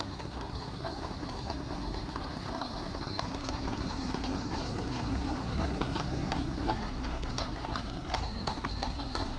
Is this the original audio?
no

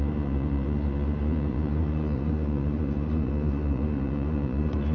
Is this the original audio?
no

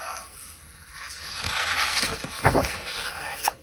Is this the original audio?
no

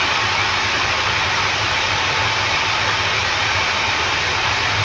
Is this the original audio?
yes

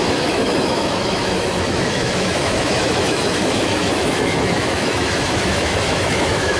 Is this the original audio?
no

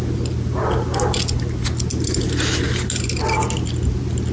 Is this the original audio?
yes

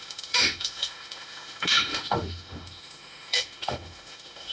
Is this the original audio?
no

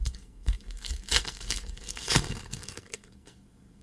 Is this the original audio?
no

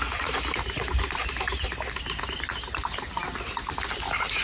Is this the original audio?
yes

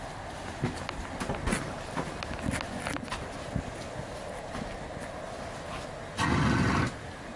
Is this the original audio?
yes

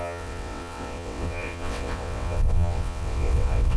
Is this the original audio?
no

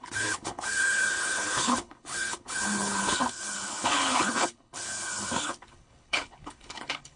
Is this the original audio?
no